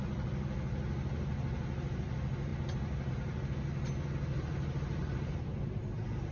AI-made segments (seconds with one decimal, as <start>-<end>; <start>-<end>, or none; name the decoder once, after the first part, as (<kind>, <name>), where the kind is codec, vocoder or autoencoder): none